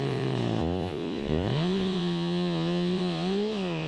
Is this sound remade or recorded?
remade